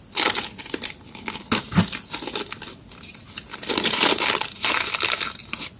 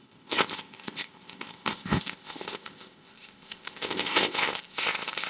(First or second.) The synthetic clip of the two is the second